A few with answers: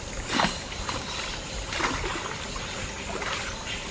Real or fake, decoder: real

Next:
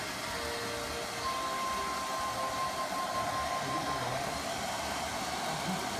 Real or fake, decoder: real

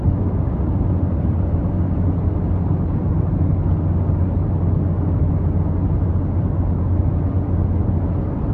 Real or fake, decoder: real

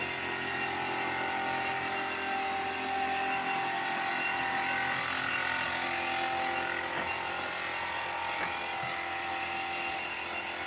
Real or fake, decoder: real